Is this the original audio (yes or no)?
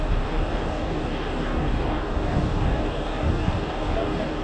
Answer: no